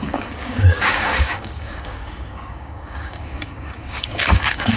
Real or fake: fake